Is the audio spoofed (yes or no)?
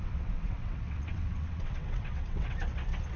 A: yes